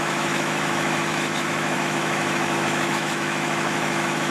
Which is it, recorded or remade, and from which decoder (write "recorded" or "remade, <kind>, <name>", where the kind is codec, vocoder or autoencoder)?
remade, autoencoder, DAC-VAE